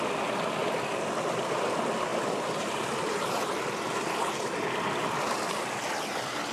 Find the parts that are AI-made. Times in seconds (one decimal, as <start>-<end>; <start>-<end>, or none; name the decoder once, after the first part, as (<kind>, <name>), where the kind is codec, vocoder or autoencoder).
none

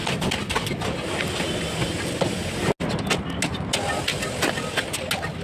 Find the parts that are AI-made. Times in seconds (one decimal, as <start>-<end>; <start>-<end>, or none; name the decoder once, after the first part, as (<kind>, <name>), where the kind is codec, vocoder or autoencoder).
none